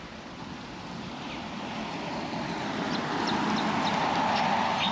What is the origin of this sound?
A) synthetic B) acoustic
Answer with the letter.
B